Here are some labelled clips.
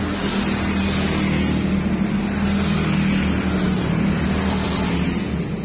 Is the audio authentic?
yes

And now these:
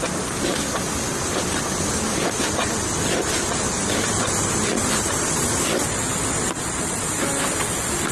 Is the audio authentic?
yes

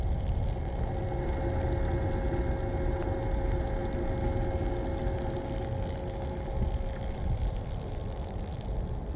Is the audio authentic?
yes